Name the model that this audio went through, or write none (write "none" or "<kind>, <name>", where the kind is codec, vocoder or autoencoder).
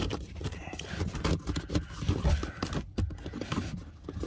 none